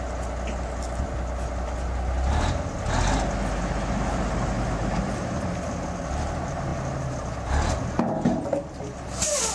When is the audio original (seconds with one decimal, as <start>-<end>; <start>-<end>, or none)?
0.0-9.5